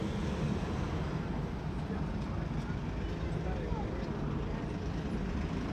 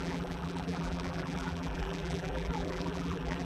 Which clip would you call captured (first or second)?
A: first